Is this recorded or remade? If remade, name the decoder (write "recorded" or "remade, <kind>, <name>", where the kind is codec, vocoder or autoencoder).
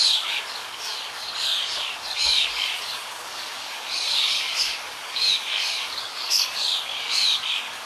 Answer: remade, codec, DAC